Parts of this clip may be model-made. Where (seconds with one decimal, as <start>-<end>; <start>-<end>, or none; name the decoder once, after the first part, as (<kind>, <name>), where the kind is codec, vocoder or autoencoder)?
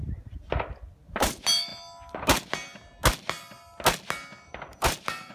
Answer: 0.0-1.7 (vocoder, BigVGAN v2); 4.5-5.3